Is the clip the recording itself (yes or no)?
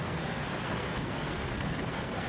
no